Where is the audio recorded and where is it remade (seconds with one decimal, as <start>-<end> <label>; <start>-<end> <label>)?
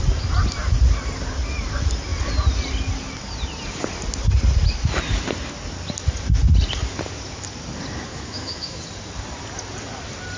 0.0-8.1 recorded; 8.1-8.8 remade; 8.8-10.4 recorded